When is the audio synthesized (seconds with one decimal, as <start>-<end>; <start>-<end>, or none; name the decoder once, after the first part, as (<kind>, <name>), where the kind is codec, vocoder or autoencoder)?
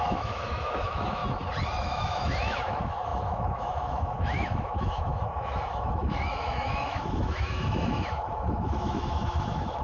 0.0-1.2 (autoencoder, DAC-VAE); 1.8-9.8